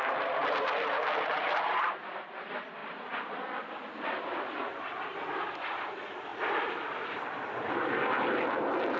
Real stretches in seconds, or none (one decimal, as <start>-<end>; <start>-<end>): 0.0-6.3; 7.7-9.0